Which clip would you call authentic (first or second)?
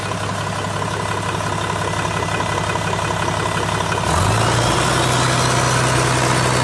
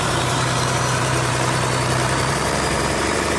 first